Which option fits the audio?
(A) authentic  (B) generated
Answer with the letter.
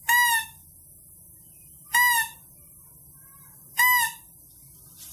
A